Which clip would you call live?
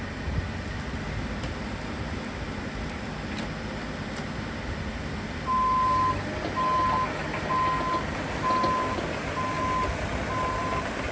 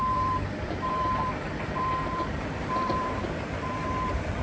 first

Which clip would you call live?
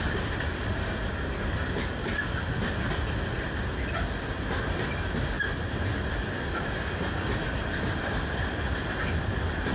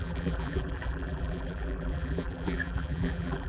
first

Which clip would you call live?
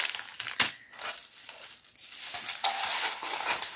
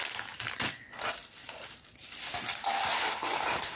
first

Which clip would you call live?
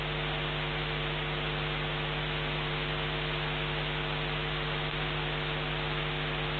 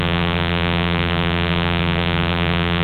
first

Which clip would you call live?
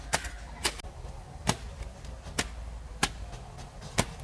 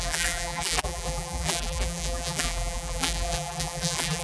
first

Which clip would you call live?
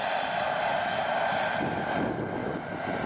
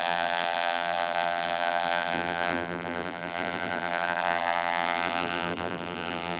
first